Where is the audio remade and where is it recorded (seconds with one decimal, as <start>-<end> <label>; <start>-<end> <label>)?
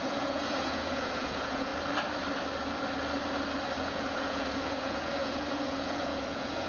0.0-1.7 remade; 1.7-3.8 recorded; 3.8-6.7 remade